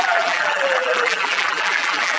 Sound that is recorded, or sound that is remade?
remade